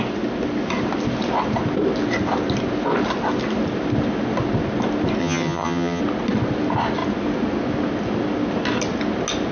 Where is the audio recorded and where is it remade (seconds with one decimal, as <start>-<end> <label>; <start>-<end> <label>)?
0.0-5.2 recorded; 5.2-6.0 remade; 6.0-9.5 recorded